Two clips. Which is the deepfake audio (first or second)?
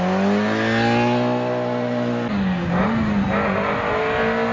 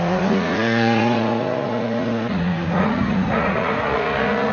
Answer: second